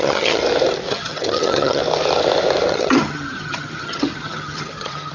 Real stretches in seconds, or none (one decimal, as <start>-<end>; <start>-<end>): 0.4-0.9; 1.8-2.7